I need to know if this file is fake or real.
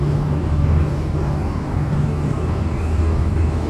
fake